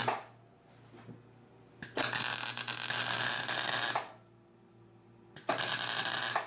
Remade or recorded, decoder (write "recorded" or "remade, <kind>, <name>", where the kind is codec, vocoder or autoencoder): recorded